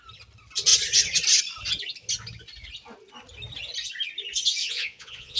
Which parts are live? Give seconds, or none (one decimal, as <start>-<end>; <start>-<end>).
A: 0.0-4.6